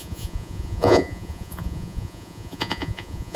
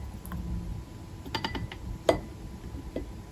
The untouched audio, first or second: second